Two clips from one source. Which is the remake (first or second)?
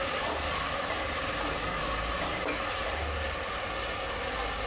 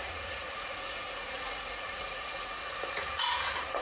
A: second